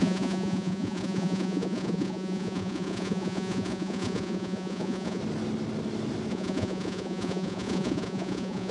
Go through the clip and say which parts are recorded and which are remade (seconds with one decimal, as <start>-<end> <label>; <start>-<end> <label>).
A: 0.0-5.2 remade; 5.2-6.3 recorded; 6.3-8.7 remade